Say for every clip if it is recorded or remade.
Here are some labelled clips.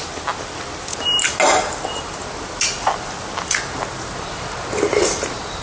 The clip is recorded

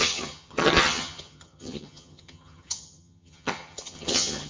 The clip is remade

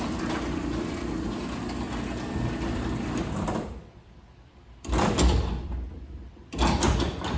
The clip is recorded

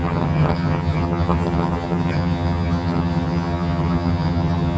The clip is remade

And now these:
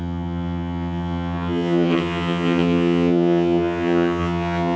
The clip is remade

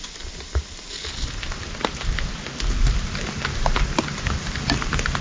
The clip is recorded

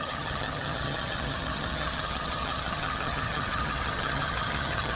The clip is remade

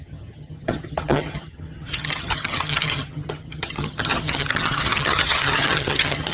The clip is remade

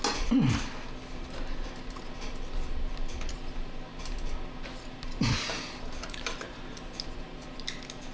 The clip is recorded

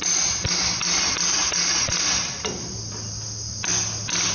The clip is recorded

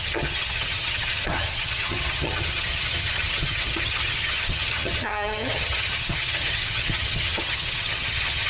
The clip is remade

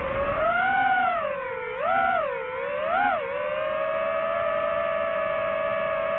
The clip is recorded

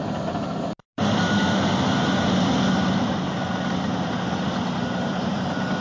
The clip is recorded